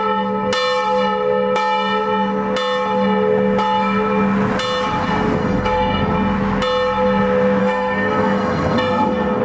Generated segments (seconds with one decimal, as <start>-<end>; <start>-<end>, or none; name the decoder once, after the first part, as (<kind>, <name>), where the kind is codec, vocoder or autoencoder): 5.4-6.1 (codec, SNAC); 7.6-9.4